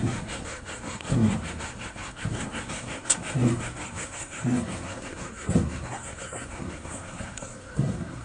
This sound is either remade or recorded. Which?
remade